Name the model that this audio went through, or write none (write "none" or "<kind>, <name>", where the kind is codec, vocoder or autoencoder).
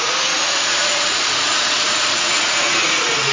vocoder, Vocos